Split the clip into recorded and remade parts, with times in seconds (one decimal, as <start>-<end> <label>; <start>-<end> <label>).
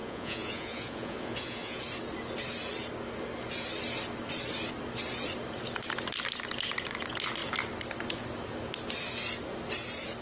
0.0-1.8 remade; 1.8-10.2 recorded